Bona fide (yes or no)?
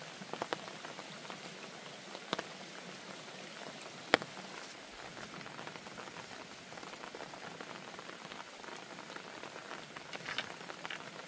yes